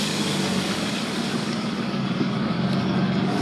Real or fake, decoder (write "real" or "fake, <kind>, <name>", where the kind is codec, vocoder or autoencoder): fake, codec, DAC